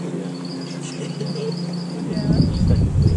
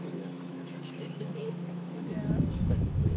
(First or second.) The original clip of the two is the first